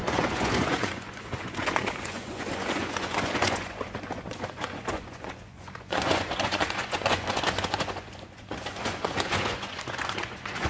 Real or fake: fake